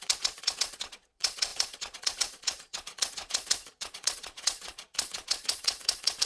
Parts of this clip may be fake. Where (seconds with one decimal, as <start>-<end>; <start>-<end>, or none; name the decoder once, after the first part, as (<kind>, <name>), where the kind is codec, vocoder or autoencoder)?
0.0-6.3 (vocoder, Vocos)